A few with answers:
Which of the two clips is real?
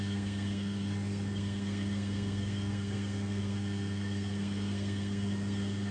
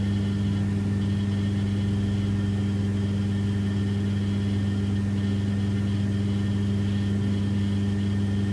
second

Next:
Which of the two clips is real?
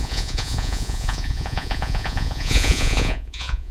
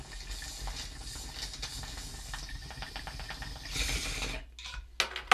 second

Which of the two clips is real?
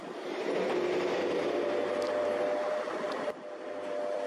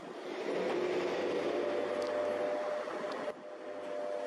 second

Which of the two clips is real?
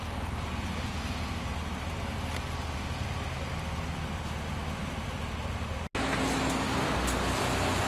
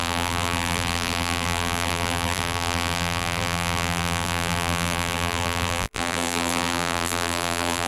first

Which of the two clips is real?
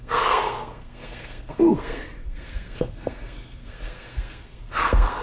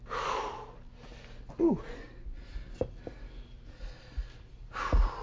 second